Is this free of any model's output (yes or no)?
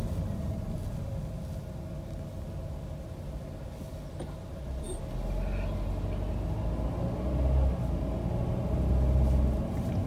yes